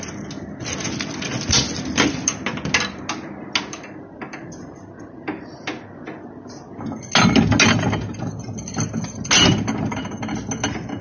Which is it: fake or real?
real